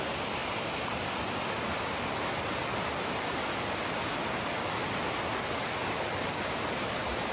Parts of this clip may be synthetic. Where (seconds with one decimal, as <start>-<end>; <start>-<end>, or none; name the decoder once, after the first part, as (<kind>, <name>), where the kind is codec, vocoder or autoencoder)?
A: 0.4-1.2 (vocoder, BigVGAN v2); 5.8-7.3